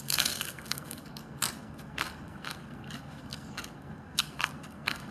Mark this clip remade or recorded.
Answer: remade